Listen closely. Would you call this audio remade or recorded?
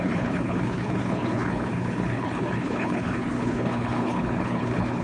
remade